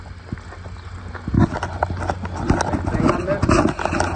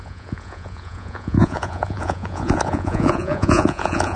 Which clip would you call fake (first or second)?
second